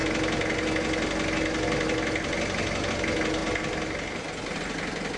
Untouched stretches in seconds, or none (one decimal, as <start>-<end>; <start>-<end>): 0.0-5.2